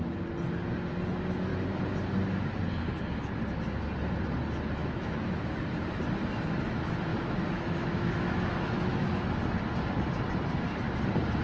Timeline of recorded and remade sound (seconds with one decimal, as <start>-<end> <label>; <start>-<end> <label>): 0.0-4.8 recorded; 4.8-5.5 remade; 5.5-7.1 recorded; 7.1-9.3 remade; 9.3-11.4 recorded